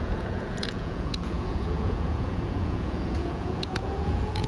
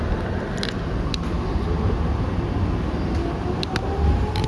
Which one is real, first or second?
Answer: second